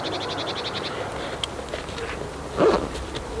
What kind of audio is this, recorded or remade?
recorded